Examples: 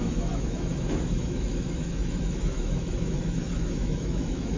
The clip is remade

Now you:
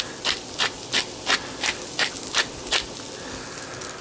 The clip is recorded